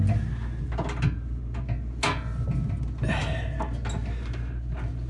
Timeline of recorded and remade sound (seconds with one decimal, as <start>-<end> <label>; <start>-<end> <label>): 0.0-5.1 recorded

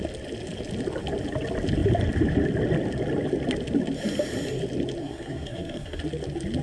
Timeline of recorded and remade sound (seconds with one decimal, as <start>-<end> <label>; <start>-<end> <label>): 0.0-5.0 recorded; 5.0-6.0 remade; 6.0-6.6 recorded

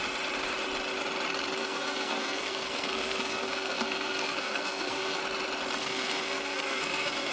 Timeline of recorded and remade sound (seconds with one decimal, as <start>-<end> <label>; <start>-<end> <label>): 0.0-1.6 recorded; 1.6-5.2 remade; 5.2-5.8 recorded; 5.8-7.3 remade

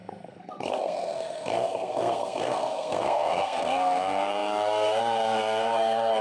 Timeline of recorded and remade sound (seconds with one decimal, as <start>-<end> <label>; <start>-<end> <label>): 0.0-6.2 remade

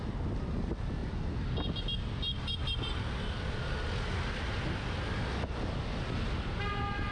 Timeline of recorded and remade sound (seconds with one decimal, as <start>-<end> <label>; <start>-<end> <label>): 0.0-7.1 recorded

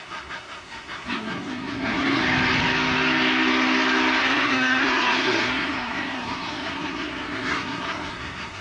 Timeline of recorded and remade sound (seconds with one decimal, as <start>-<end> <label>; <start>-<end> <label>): 0.0-2.2 remade; 2.2-4.2 recorded; 4.2-8.6 remade